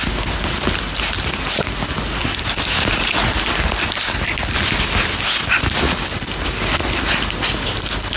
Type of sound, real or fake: real